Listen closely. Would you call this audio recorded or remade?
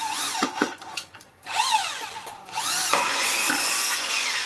remade